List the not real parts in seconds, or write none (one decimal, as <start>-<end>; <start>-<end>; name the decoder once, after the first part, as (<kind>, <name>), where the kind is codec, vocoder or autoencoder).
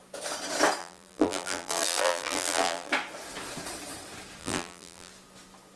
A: 0.8-2.9 (vocoder, BigVGAN v2); 4.4-5.1